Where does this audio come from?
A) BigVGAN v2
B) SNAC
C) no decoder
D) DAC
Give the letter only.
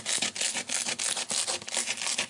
C